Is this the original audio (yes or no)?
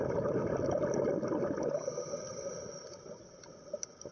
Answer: yes